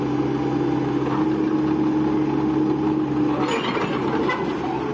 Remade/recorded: recorded